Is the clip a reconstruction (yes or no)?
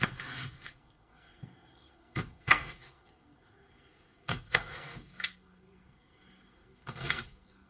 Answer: yes